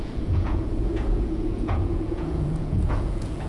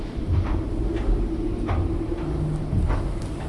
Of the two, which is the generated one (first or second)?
first